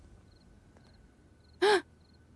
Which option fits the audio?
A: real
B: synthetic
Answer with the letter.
A